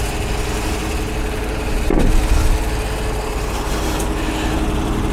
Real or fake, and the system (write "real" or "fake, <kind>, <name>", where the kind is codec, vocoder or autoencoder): real